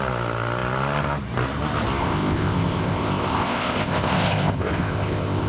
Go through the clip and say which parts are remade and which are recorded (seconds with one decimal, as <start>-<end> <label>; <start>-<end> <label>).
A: 0.0-2.0 recorded; 2.0-5.5 remade